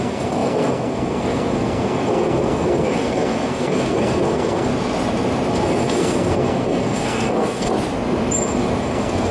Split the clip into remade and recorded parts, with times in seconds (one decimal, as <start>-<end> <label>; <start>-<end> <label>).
0.0-4.7 remade; 4.7-5.5 recorded; 5.5-7.7 remade; 7.7-8.8 recorded; 8.8-9.3 remade